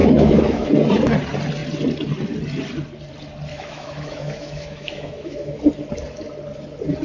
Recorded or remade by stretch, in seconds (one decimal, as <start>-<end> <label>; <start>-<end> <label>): 0.0-0.7 remade; 0.7-3.5 recorded; 3.5-5.6 remade; 5.6-7.0 recorded